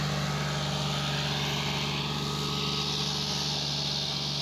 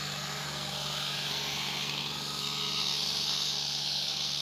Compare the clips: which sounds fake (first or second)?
second